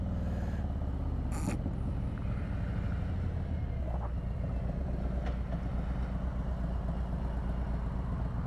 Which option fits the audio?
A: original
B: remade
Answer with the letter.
A